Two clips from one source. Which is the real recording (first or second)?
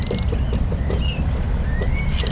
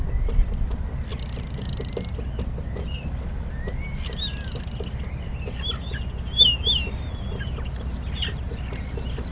second